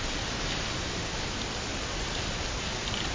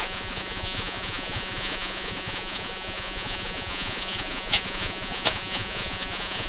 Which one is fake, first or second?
second